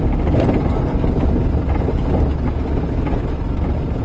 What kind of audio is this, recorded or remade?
recorded